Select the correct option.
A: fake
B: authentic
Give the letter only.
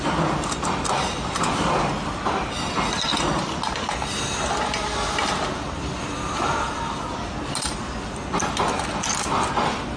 B